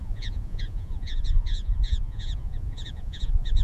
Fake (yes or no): yes